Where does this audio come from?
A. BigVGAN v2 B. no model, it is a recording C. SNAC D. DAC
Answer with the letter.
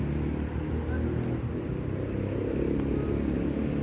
B